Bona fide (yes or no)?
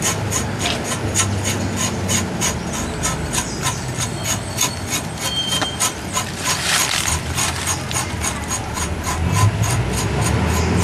yes